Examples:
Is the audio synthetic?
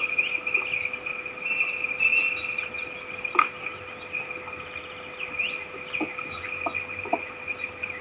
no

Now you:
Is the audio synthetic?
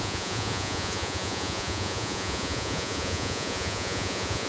yes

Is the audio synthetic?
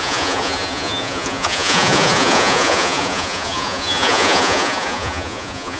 yes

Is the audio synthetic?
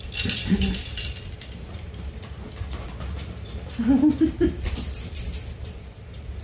no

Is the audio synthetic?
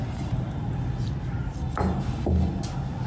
no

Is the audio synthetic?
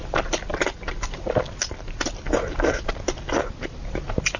no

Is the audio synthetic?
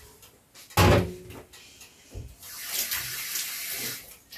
no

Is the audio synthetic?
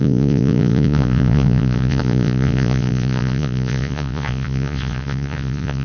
yes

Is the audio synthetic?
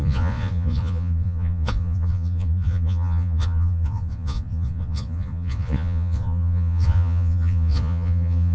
yes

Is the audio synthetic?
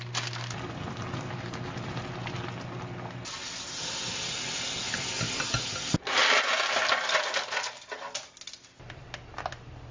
no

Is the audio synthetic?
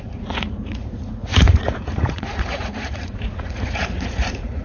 yes